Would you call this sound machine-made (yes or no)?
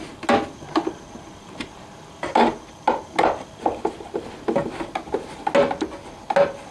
no